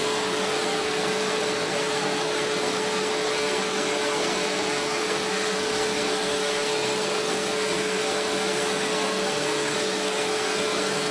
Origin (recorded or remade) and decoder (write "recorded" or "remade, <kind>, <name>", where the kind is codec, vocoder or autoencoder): remade, codec, SNAC